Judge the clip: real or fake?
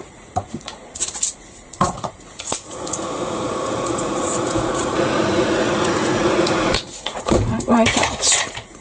fake